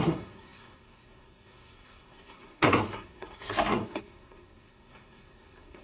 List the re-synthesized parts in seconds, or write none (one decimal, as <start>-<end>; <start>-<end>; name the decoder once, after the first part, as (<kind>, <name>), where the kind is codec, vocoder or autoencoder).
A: 0.0-5.8 (codec, SNAC)